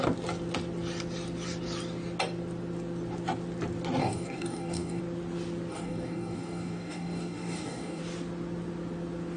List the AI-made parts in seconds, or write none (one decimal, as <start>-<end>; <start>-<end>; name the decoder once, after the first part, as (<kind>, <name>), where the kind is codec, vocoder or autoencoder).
4.0-5.0 (codec, DAC); 5.7-8.0